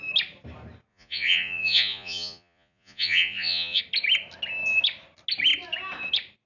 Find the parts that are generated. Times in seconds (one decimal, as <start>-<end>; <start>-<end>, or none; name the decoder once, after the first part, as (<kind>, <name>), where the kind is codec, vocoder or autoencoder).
0.9-3.8 (vocoder, Vocos)